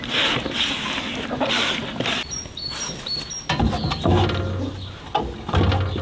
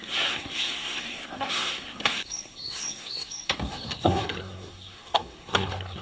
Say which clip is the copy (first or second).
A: second